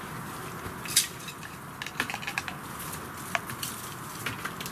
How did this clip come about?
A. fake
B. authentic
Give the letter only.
B